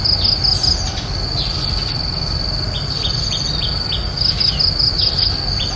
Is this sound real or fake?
real